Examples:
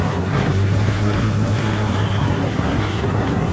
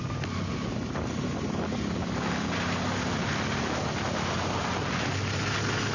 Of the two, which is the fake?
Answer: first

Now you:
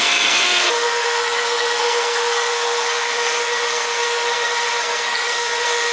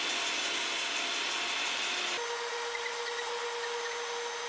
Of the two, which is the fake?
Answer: first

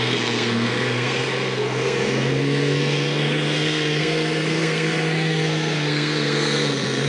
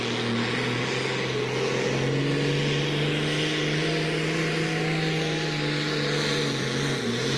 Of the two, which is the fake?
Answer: first